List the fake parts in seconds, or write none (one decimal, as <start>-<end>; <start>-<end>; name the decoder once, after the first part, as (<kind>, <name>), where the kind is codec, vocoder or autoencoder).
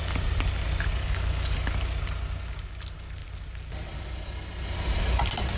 1.0-1.7 (codec, DAC)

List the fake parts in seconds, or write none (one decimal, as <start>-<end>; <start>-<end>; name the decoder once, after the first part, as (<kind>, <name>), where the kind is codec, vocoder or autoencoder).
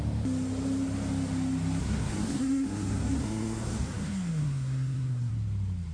1.8-5.3 (codec, SNAC)